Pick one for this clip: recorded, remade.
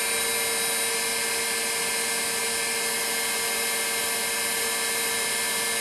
recorded